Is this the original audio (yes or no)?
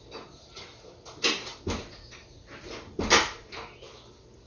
yes